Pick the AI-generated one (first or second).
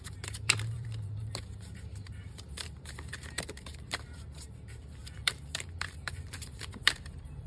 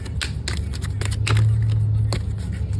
first